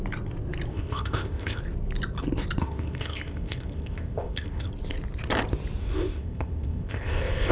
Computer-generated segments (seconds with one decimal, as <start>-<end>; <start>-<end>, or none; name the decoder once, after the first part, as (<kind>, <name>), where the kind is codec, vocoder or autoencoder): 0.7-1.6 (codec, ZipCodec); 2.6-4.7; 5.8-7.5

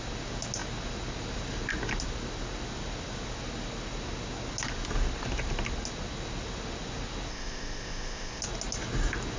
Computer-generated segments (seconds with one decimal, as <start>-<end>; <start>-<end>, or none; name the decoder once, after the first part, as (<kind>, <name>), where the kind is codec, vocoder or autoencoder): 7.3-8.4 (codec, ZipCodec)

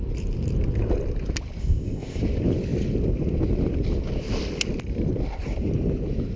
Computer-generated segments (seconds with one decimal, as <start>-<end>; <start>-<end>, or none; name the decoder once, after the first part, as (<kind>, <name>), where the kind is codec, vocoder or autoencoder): 1.6-2.2 (codec, ZipCodec)